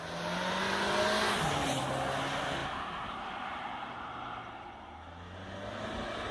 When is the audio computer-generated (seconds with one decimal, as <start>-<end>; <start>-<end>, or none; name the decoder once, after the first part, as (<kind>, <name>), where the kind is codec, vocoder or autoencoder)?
none